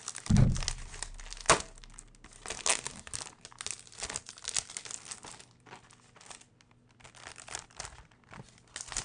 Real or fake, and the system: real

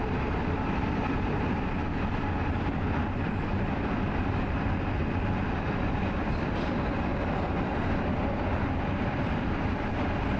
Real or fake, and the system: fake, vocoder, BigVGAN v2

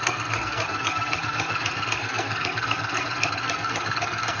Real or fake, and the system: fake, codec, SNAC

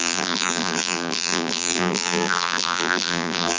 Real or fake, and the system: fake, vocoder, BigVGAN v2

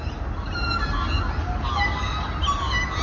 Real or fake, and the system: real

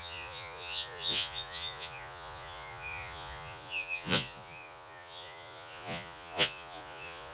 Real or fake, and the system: fake, vocoder, Vocos